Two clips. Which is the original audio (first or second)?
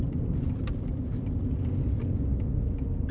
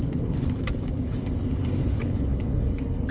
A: first